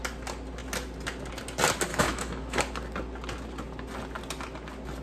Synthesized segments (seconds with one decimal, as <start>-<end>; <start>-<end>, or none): 1.9-2.6